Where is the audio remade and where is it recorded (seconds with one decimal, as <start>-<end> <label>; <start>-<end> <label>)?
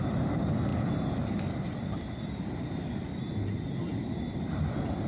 0.0-5.1 recorded